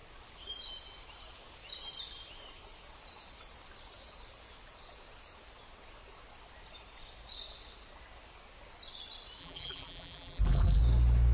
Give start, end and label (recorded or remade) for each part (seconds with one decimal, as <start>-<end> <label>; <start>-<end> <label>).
0.0-9.4 recorded; 9.4-10.8 remade; 10.8-11.3 recorded